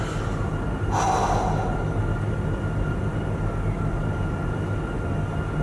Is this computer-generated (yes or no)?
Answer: no